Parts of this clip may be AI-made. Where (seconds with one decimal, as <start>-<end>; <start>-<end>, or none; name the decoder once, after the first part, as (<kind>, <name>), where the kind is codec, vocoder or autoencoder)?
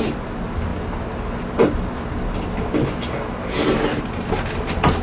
none